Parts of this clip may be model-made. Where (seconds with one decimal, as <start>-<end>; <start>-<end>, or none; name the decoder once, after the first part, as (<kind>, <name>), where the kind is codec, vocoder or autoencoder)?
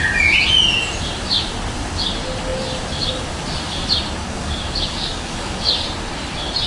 4.2-5.6 (codec, DAC)